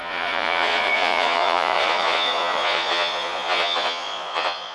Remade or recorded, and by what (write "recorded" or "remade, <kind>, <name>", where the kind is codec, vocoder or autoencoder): remade, vocoder, Vocos